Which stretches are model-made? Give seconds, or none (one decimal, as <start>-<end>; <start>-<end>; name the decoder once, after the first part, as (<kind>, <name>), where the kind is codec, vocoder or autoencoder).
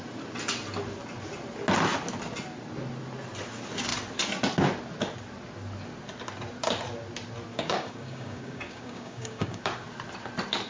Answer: 7.5-9.6 (codec, DAC)